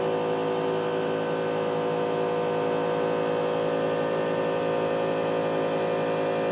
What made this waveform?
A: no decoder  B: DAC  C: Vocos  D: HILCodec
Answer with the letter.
A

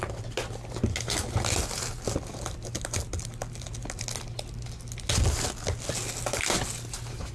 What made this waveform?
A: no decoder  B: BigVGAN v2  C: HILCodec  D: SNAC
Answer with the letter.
A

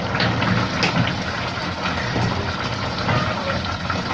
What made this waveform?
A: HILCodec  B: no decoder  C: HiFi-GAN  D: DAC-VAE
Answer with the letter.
B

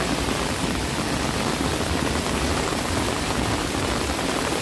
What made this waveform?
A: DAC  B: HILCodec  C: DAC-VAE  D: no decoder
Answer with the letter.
D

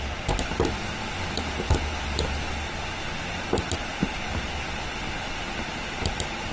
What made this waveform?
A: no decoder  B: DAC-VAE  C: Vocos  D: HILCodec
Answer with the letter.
A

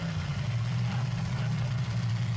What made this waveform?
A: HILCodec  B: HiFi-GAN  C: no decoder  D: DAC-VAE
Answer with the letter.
C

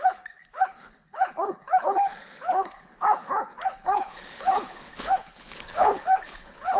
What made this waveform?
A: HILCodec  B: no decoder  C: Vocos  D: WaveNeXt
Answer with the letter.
A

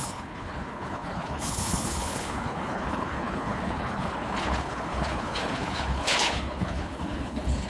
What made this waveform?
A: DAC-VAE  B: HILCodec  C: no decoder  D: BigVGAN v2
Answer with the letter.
B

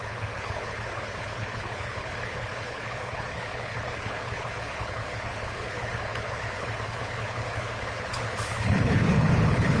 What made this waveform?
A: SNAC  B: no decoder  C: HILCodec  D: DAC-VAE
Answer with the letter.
C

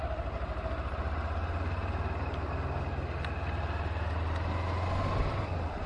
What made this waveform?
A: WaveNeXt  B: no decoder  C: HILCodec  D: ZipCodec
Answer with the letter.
B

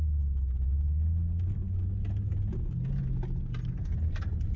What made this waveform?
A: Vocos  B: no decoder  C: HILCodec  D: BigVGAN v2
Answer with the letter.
B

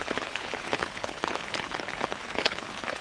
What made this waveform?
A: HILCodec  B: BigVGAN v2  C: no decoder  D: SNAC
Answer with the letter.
A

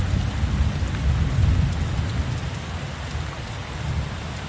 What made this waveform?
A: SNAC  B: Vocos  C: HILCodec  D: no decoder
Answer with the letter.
D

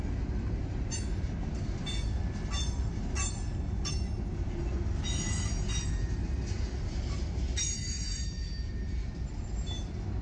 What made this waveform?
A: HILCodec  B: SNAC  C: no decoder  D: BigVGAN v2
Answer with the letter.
C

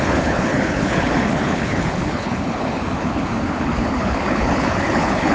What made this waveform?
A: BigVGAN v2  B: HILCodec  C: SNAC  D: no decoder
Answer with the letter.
B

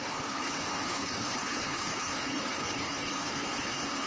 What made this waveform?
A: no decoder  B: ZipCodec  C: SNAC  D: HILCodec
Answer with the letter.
D